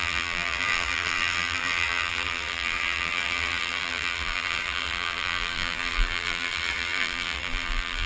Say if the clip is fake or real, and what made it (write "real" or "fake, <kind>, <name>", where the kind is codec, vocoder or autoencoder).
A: fake, vocoder, BigVGAN v2